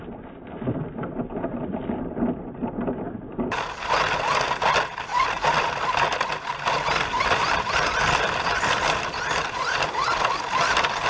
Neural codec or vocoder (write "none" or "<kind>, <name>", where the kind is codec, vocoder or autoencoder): none